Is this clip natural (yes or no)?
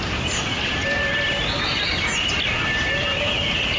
yes